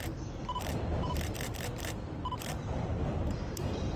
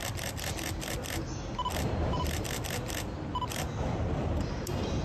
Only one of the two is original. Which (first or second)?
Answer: second